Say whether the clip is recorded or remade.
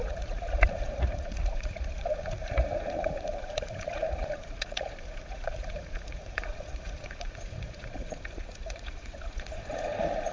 remade